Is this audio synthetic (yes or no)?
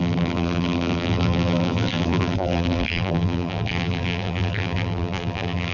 yes